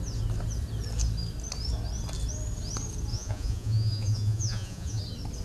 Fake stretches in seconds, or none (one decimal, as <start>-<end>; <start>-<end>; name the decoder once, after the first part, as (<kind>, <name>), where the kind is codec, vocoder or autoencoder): 3.1-5.0 (vocoder, Vocos)